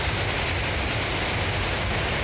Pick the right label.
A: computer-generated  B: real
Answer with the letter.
B